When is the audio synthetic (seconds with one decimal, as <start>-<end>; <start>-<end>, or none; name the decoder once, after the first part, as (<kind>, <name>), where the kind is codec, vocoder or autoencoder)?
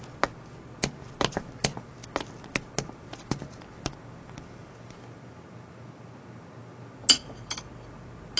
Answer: none